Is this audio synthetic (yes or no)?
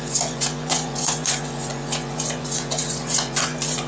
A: yes